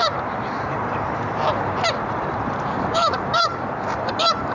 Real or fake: fake